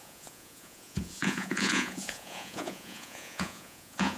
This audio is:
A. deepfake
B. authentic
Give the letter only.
A